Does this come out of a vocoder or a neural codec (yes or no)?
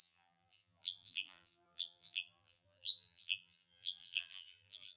yes